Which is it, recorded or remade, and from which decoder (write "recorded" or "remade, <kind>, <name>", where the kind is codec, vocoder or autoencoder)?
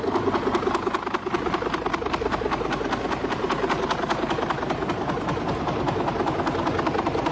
recorded